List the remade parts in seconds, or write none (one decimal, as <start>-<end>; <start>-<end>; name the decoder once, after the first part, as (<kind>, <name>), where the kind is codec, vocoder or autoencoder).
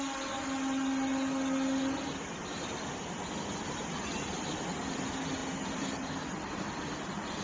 none